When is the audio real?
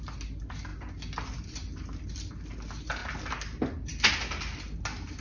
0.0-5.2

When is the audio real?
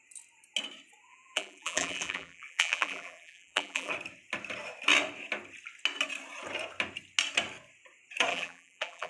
0.0-1.1; 3.9-8.3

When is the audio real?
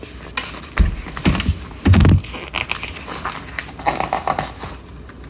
0.0-5.3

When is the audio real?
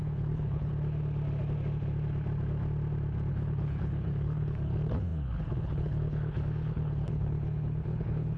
0.7-3.3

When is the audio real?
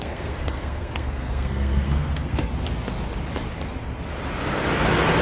2.5-5.2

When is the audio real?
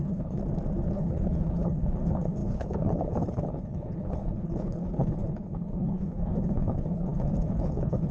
0.4-0.9